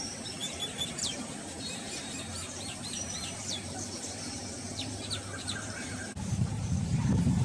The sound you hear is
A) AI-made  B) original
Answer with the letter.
A